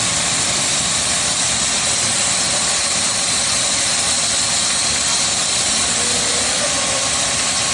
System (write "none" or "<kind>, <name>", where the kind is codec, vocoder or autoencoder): vocoder, BigVGAN v2